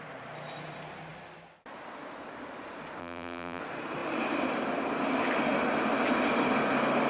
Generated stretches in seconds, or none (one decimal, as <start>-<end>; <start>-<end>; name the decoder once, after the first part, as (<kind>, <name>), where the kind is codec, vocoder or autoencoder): 3.0-3.6 (vocoder, BigVGAN v2)